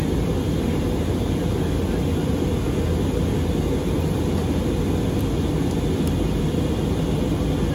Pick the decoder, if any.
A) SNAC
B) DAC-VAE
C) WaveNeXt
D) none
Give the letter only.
D